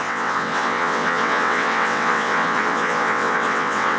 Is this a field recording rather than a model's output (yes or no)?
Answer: no